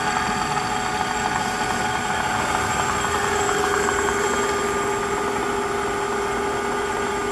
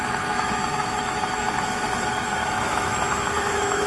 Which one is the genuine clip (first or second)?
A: first